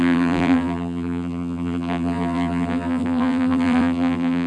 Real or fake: fake